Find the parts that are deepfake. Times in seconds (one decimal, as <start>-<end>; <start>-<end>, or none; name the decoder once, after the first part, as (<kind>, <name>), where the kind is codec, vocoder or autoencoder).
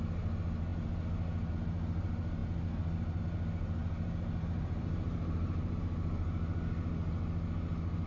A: 3.8-5.8 (vocoder, BigVGAN v2)